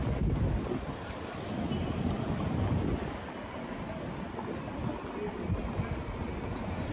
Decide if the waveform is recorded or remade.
recorded